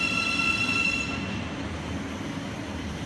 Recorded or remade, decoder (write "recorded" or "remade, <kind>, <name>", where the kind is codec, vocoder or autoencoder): recorded